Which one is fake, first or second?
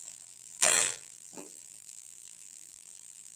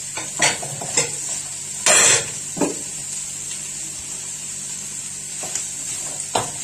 first